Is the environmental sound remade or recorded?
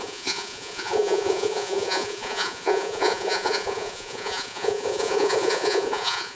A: remade